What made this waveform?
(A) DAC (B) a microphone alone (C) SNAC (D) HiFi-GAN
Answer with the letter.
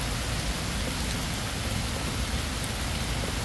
B